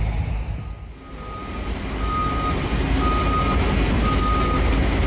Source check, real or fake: real